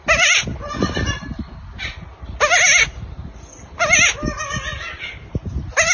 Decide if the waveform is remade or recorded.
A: recorded